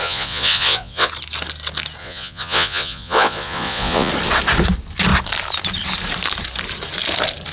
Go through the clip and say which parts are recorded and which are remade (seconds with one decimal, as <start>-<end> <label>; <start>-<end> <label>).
0.0-1.1 remade; 1.1-2.0 recorded; 2.0-4.1 remade; 4.1-7.5 recorded